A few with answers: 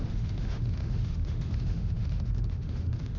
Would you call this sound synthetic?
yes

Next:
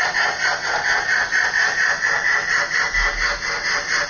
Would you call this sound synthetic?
no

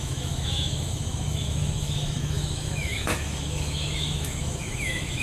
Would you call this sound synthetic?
yes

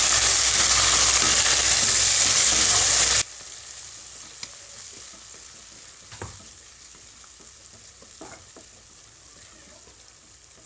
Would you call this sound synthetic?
no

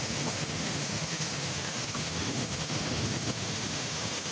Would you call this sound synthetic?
yes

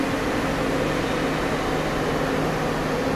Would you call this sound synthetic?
no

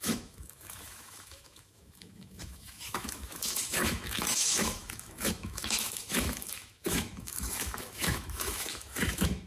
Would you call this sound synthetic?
yes